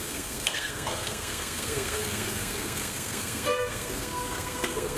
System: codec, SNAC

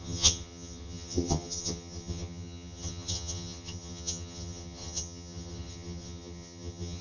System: vocoder, HiFi-GAN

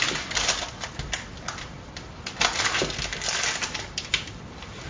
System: none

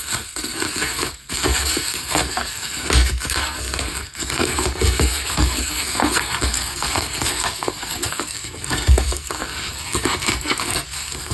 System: codec, SNAC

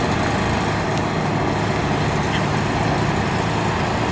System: none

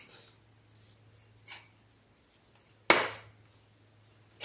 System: none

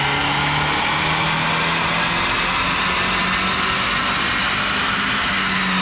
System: none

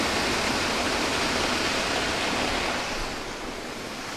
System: none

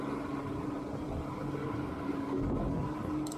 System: none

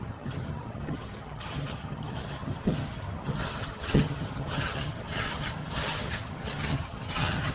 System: vocoder, HiFi-GAN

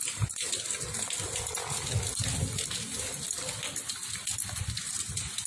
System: none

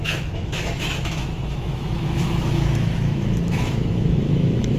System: autoencoder, DAC-VAE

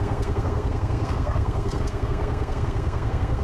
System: codec, SNAC